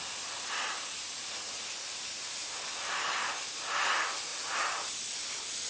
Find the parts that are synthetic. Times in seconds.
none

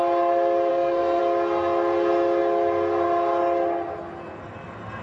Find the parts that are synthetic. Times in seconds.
0.7-1.2 (codec, SNAC)

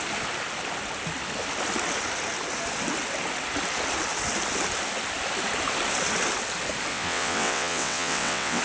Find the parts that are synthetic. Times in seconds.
6.9-8.6 (vocoder, WaveNeXt)

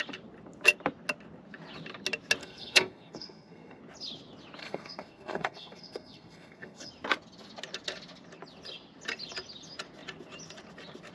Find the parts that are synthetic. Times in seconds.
2.4-3.8 (codec, SNAC); 4.6-6.9

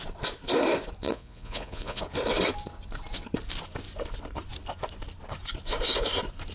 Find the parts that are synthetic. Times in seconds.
1.0-2.0 (vocoder, Vocos)

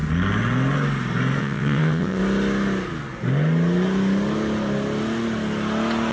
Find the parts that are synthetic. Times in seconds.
1.4-2.2 (vocoder, WaveNeXt)